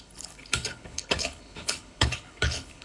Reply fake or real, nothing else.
fake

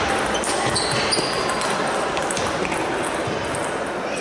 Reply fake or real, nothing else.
real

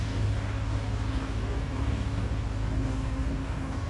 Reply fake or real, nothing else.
fake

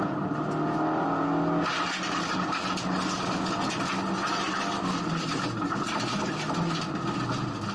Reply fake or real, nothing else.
real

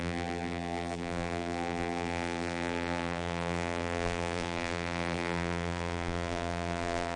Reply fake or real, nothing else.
fake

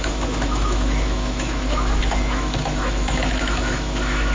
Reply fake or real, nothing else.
fake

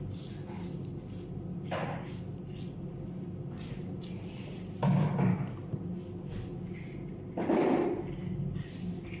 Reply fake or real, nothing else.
real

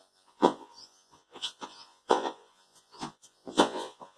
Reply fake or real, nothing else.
fake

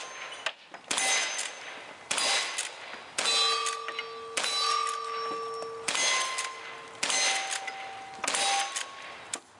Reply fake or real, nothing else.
real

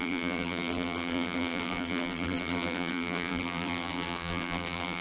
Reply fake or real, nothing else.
fake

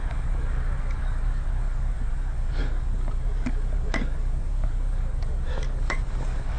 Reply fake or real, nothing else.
fake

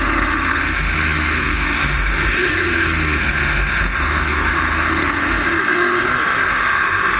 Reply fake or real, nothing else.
fake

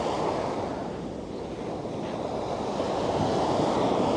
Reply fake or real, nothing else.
real